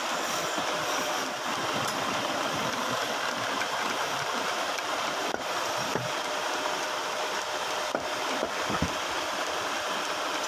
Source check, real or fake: fake